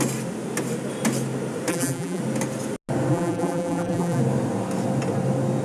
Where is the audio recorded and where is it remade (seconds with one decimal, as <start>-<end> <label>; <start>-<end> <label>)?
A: 0.0-1.7 recorded; 1.7-2.2 remade; 2.2-3.1 recorded; 3.1-4.2 remade; 4.2-5.6 recorded